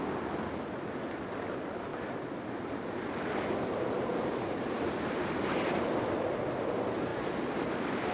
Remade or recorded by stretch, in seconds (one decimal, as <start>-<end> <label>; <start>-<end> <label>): 0.0-1.9 recorded; 1.9-3.1 remade; 3.1-4.1 recorded; 4.1-5.9 remade; 5.9-7.1 recorded; 7.1-7.6 remade; 7.6-8.1 recorded